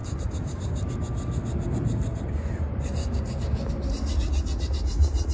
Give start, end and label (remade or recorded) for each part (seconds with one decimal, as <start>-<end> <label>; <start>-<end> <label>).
0.0-3.0 recorded; 3.0-3.7 remade; 3.7-5.3 recorded